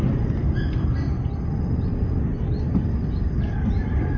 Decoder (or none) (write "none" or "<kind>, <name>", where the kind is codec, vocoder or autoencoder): none